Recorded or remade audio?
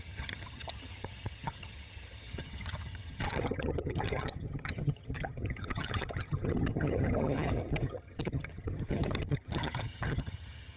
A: remade